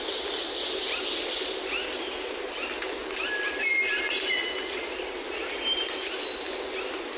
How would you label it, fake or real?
real